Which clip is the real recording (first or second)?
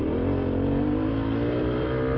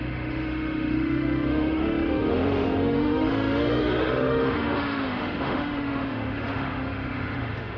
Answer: first